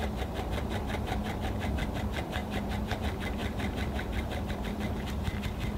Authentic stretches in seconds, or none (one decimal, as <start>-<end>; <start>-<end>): 0.0-2.4; 3.0-5.8